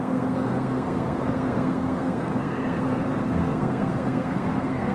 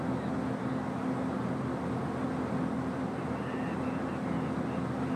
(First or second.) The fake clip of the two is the first